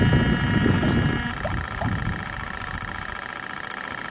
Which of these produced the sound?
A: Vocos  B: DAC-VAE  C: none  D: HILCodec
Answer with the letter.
C